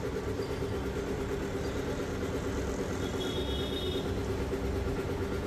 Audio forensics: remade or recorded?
recorded